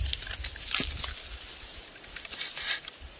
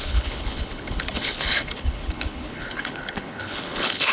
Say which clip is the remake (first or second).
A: second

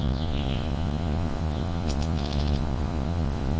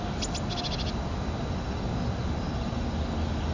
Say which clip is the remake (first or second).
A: first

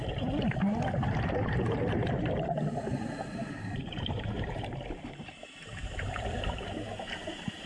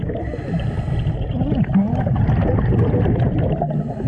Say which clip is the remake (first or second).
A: first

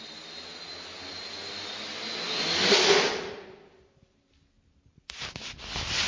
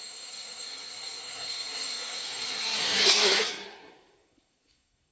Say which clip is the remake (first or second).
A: second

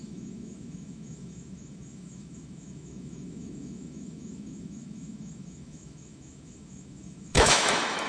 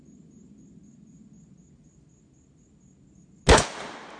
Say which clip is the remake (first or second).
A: first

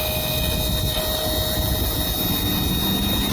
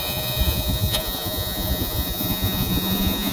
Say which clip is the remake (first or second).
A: second